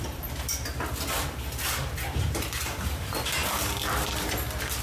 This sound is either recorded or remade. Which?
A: remade